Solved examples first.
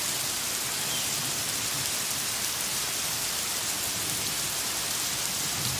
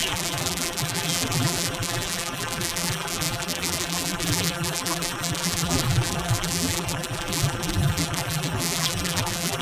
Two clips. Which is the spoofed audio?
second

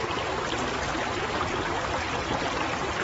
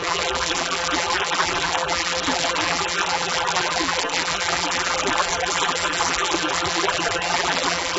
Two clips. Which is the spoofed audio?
second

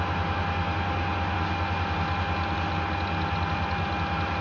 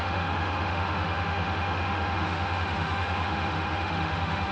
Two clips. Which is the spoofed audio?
second